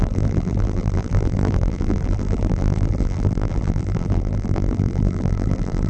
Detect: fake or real fake